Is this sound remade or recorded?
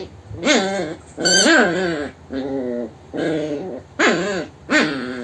recorded